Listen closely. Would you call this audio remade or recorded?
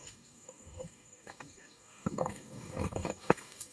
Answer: remade